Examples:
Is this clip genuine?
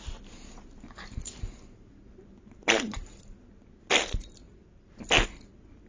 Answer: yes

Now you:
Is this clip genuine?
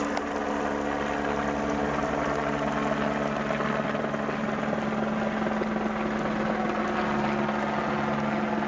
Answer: yes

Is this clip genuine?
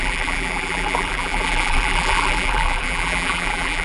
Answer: no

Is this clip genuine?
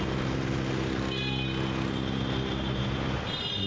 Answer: yes